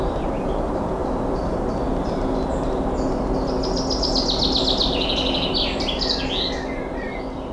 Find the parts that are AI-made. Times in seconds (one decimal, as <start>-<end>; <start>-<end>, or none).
1.0-1.6